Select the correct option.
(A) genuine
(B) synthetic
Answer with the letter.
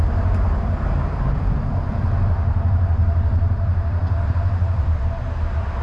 B